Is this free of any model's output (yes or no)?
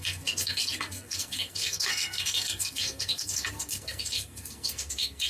no